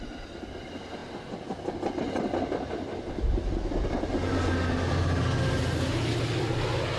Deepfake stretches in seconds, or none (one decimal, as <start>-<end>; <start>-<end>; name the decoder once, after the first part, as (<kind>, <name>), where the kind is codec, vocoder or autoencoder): none